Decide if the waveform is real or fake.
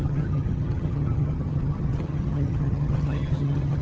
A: fake